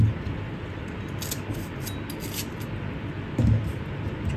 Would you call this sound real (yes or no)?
yes